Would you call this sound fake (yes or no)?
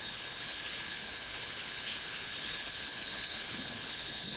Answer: yes